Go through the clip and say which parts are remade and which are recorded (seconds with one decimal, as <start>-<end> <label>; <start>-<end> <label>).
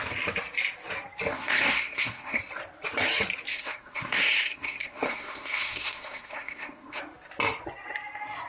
0.0-1.3 recorded; 1.3-2.4 remade; 2.4-3.5 recorded; 3.5-7.0 remade; 7.0-8.5 recorded